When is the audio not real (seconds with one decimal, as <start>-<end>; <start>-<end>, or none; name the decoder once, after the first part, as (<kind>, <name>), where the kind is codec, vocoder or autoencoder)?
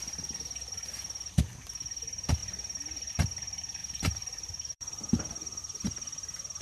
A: 3.8-5.6 (vocoder, BigVGAN v2)